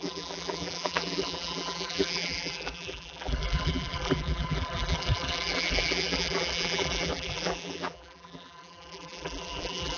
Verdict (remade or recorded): remade